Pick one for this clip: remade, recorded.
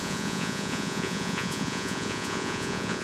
remade